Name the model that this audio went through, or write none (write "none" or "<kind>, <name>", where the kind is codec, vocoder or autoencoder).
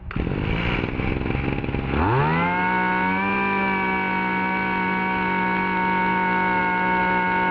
none